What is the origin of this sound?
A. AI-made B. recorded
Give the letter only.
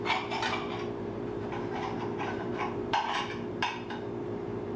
A